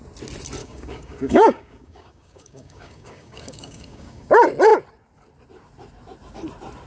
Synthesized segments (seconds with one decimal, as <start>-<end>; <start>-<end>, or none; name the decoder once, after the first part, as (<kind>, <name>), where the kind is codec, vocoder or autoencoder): 0.6-4.3 (codec, DAC)